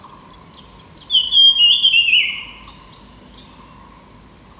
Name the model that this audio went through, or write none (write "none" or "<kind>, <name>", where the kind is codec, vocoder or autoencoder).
none